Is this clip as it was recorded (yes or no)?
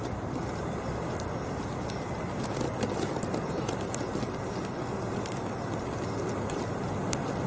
yes